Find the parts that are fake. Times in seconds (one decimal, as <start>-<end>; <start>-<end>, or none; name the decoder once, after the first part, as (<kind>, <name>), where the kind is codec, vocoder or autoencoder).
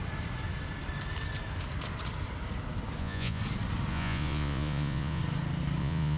3.0-3.4 (vocoder, Vocos); 3.9-5.2; 5.8-6.2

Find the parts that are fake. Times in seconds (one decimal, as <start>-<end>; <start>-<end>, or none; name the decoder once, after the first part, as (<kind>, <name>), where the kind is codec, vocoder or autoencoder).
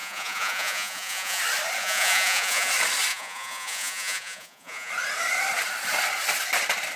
0.0-1.4 (vocoder, Vocos); 1.8-2.7; 3.1-4.9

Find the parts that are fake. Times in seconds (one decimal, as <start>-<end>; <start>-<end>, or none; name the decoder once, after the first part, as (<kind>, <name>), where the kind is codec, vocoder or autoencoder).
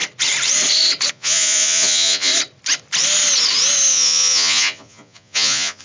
1.1-2.3 (vocoder, Vocos); 3.9-5.8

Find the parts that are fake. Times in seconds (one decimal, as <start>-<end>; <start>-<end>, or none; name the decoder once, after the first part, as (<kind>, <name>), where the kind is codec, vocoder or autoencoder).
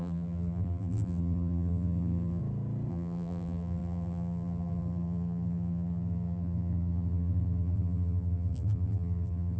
0.0-2.4 (vocoder, BigVGAN v2); 2.9-9.6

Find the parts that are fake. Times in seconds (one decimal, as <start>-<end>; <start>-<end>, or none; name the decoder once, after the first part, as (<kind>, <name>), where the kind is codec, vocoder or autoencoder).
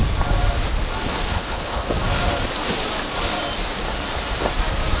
1.3-1.9 (codec, HILCodec)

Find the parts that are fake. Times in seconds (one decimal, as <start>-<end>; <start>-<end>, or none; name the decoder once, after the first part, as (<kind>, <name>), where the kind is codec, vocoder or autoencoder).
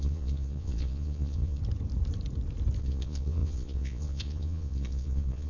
0.0-1.6 (vocoder, Vocos); 2.8-5.5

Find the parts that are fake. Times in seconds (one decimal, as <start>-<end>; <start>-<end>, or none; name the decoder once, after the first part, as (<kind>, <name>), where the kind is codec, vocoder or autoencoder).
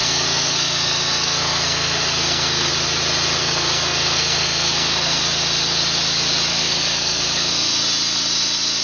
0.0-2.7 (codec, SNAC); 3.4-5.2; 6.5-7.8